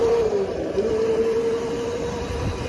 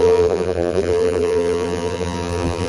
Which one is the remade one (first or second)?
second